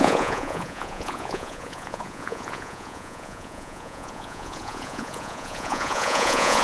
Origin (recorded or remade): remade